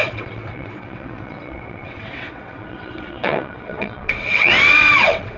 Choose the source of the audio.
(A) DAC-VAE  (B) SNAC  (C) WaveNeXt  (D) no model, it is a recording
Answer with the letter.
C